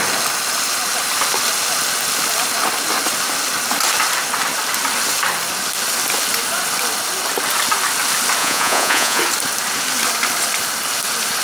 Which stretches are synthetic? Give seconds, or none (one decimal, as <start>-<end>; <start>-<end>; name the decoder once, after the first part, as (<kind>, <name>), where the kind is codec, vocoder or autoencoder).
8.4-9.2 (vocoder, Vocos)